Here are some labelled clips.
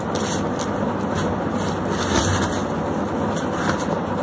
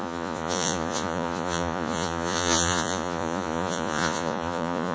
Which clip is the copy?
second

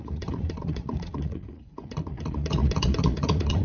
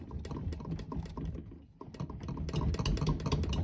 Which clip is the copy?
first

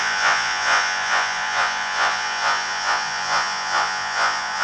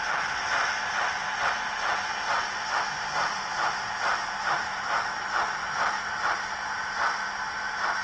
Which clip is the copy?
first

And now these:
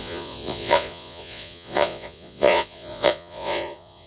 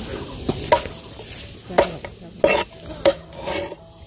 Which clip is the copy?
first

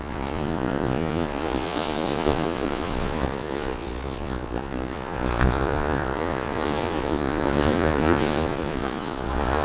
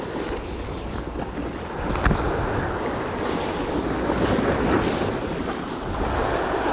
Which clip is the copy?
first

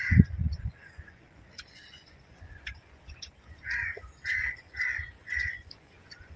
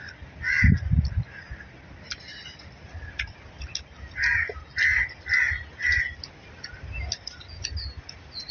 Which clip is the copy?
first